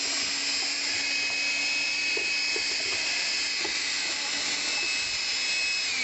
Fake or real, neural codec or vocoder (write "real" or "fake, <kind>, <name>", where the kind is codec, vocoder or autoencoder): real